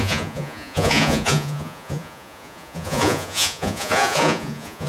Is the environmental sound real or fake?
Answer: fake